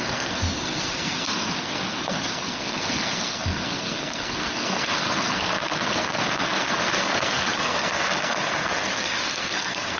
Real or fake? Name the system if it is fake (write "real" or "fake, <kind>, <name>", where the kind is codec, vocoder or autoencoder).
fake, codec, SNAC